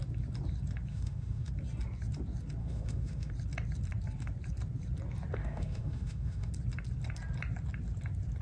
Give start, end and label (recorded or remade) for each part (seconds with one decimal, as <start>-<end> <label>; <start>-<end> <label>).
0.0-0.9 recorded; 0.9-1.5 remade; 1.5-2.6 recorded; 2.6-3.3 remade; 3.3-5.4 recorded; 5.4-6.5 remade; 6.5-8.4 recorded